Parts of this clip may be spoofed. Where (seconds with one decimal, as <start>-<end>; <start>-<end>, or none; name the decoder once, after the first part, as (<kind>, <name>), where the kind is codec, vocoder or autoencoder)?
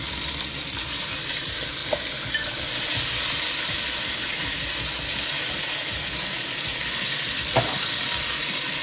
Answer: none